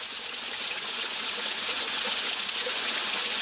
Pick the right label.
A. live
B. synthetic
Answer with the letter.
B